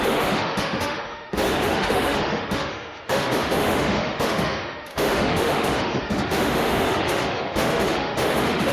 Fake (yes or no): yes